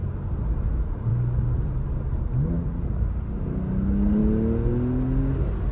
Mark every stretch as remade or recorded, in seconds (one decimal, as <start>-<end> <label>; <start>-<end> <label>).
0.0-5.7 recorded